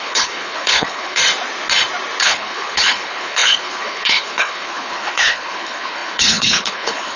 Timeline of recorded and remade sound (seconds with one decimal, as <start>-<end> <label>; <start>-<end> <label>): 0.0-1.2 remade; 1.2-2.2 recorded; 2.2-7.2 remade